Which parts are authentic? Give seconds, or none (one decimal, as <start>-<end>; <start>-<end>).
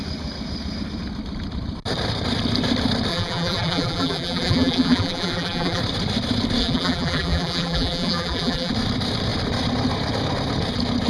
0.0-3.1; 5.8-6.6; 8.7-11.1